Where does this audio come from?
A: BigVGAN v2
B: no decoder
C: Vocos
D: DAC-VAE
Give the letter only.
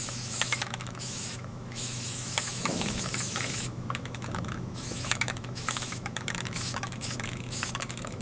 D